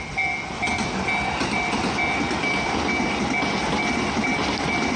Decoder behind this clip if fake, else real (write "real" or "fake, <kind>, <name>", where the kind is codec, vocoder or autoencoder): real